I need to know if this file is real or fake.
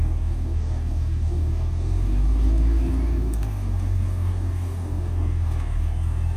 fake